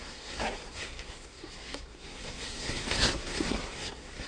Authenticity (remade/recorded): remade